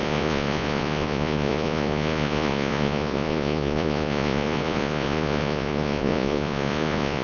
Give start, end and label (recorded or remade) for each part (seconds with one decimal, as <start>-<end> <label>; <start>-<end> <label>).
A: 0.0-7.2 remade